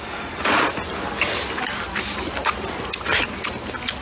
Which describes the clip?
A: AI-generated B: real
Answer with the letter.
B